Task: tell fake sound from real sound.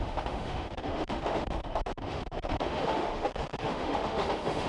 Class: fake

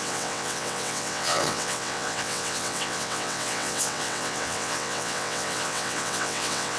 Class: fake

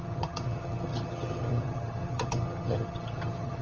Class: fake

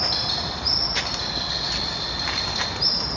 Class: real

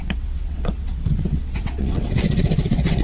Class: fake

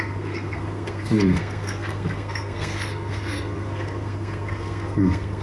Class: fake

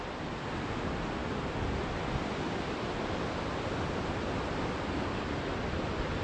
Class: real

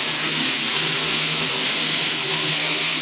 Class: fake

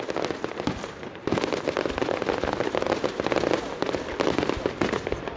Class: real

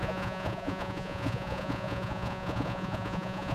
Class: fake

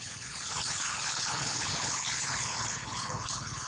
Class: fake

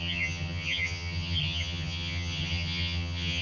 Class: fake